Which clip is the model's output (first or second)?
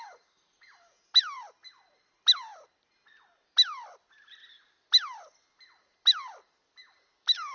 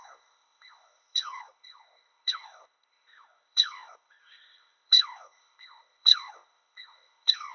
second